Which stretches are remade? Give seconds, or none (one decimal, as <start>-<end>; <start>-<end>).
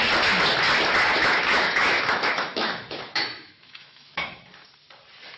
1.2-4.4